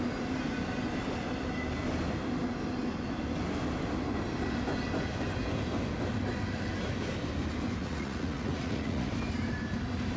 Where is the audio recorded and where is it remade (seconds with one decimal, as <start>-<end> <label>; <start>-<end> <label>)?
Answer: 0.0-7.8 recorded; 7.8-9.1 remade; 9.1-10.2 recorded